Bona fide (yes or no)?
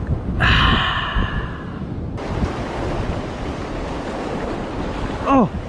yes